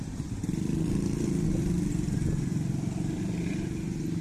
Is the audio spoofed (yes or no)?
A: no